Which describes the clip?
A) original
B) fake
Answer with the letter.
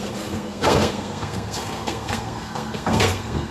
B